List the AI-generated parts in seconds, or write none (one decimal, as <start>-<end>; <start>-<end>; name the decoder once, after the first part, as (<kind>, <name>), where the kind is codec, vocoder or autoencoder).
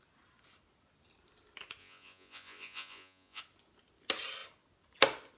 1.8-3.4 (vocoder, Vocos)